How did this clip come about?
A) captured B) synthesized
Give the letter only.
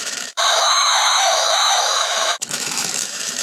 B